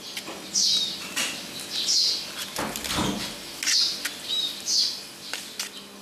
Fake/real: real